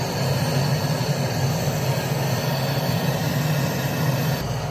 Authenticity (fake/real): real